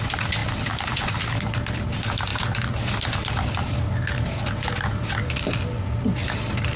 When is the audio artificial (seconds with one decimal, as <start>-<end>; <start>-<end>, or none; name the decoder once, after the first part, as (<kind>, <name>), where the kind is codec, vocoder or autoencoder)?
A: none